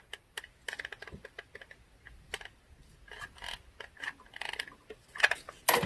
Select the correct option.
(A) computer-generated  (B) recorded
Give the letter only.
B